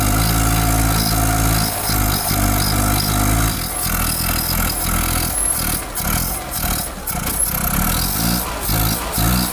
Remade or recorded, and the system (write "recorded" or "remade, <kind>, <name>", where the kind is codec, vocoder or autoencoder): recorded